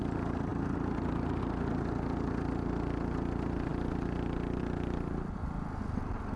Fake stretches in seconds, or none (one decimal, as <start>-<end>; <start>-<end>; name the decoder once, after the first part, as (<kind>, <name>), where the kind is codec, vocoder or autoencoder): none